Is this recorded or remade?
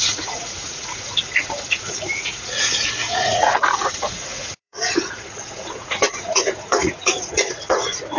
remade